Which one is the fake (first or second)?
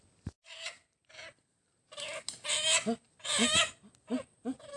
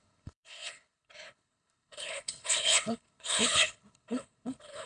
second